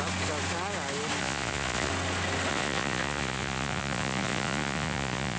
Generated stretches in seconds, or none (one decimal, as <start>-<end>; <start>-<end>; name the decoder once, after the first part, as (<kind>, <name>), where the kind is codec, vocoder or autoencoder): 1.2-1.9 (vocoder, Vocos); 2.5-5.4

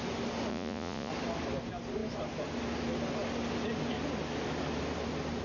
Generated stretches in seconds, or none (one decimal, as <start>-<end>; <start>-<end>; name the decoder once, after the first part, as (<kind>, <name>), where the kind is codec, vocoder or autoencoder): 0.5-1.1 (vocoder, Vocos)

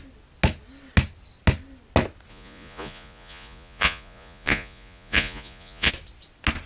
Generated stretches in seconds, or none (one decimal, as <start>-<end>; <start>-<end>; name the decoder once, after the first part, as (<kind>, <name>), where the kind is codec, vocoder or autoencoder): 2.3-5.9 (vocoder, Vocos)

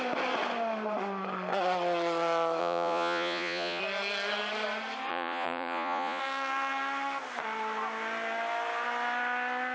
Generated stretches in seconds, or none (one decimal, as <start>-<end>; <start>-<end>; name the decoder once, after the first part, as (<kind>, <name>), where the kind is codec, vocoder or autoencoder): 2.6-3.8 (vocoder, Vocos); 5.1-6.2

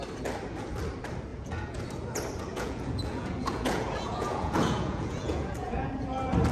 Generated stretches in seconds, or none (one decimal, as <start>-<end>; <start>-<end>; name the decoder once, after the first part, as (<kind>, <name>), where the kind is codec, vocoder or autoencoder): 1.3-1.8 (vocoder, Vocos); 2.5-5.9

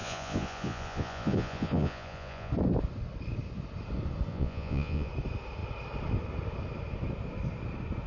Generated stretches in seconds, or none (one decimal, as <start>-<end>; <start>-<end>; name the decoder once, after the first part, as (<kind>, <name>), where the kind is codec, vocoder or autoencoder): 0.0-2.5 (vocoder, Vocos); 4.3-5.1

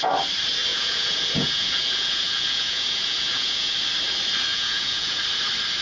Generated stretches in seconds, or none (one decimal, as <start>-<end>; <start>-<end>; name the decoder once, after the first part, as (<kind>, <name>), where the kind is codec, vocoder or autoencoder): 0.7-3.7 (vocoder, Vocos); 4.5-5.2

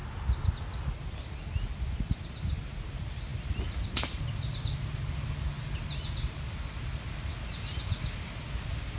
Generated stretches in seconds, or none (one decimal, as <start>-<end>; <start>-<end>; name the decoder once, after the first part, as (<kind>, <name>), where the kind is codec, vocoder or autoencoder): none